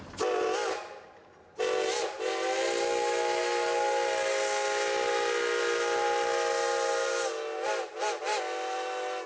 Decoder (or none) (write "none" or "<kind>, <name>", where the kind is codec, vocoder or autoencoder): none